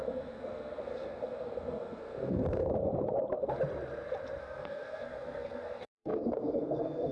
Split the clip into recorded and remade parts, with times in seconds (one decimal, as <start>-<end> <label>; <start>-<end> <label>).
0.0-2.7 remade; 2.7-4.4 recorded; 4.4-7.1 remade